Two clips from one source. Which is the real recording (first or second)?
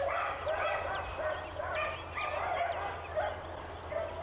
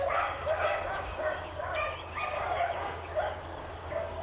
first